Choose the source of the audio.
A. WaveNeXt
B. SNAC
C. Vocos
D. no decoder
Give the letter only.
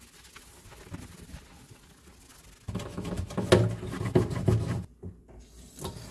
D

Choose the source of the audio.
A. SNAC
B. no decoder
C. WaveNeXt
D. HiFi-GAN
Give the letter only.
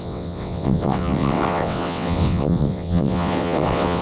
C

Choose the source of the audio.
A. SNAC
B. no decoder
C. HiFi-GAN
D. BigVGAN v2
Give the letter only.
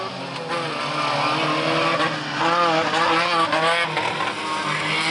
B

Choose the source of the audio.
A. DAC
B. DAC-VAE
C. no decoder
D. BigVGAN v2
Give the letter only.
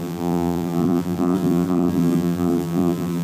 D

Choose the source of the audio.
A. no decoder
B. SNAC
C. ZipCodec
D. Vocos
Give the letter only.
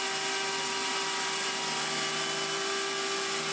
A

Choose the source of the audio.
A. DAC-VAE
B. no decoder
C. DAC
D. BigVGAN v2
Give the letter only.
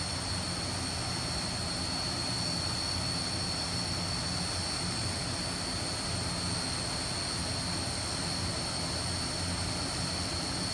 B